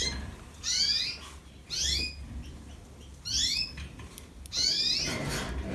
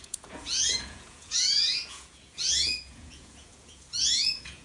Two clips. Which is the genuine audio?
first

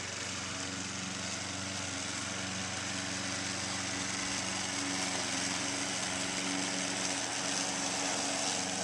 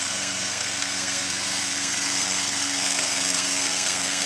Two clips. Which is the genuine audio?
first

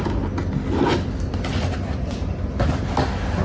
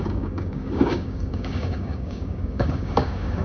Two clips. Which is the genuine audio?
first